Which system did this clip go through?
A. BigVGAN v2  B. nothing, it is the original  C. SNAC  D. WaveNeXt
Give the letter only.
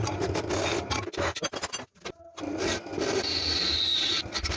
B